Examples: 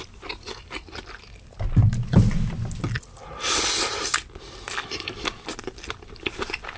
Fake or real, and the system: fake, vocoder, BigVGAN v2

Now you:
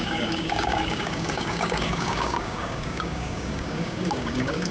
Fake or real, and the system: fake, codec, DAC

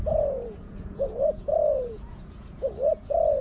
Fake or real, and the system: fake, vocoder, Vocos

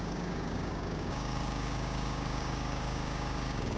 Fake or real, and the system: fake, codec, DAC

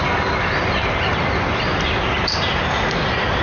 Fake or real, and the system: real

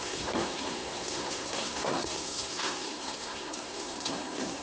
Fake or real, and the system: fake, codec, SNAC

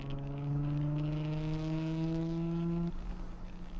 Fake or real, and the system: fake, codec, DAC